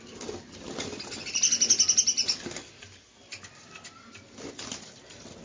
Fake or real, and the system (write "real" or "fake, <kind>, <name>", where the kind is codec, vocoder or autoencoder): real